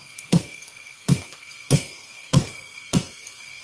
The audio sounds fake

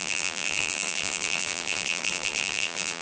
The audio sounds fake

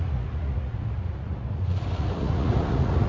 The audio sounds fake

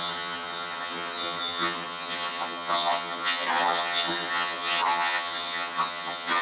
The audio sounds fake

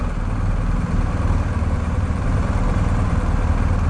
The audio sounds real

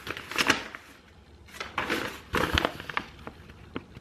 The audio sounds real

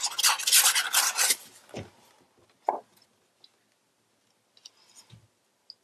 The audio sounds real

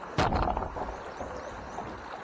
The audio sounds real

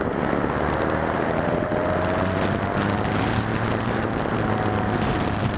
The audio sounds real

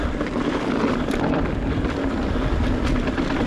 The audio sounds real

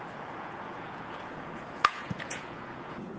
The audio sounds fake